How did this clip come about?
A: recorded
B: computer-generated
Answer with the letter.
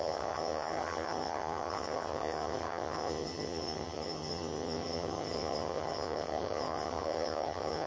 B